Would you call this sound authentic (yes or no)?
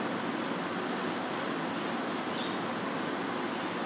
yes